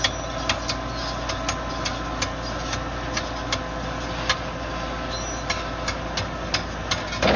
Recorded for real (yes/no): yes